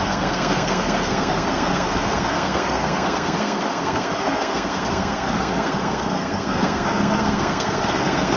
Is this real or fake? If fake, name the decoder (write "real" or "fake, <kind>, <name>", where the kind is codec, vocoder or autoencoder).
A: fake, codec, SNAC